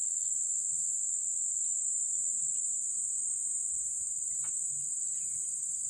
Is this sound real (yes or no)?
yes